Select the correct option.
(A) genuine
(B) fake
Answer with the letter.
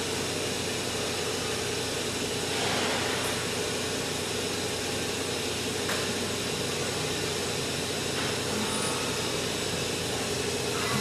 A